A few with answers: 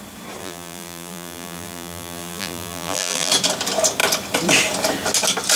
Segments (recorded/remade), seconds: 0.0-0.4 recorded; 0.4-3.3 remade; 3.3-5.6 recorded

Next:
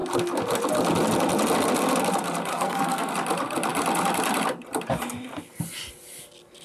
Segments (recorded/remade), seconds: 0.0-2.5 recorded; 2.5-3.1 remade; 3.1-6.6 recorded

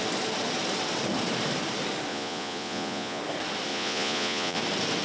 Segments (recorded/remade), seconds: 0.0-2.1 recorded; 2.1-3.2 remade; 3.2-3.7 recorded; 3.7-4.6 remade; 4.6-5.0 recorded

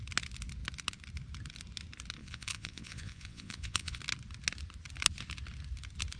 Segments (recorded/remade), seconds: 0.0-2.2 recorded; 2.2-4.0 remade; 4.0-6.2 recorded